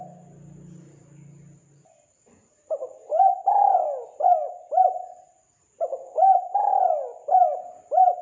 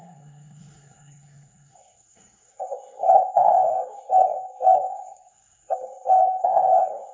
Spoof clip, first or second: second